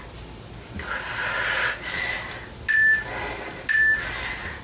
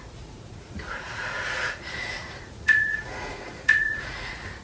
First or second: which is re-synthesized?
second